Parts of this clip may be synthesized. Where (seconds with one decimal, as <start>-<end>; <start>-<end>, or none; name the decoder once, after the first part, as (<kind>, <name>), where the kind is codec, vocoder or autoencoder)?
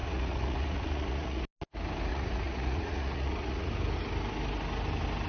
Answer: 0.0-1.4 (vocoder, Vocos); 2.1-3.7